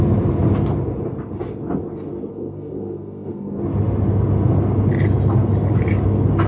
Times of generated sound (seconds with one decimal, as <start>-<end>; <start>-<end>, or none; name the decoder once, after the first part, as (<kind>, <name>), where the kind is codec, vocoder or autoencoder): 2.3-3.6 (codec, SNAC)